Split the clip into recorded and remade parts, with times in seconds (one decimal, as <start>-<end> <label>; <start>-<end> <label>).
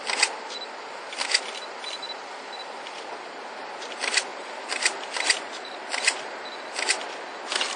0.0-4.3 recorded; 4.3-6.9 remade; 6.9-7.8 recorded